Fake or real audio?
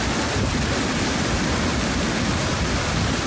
real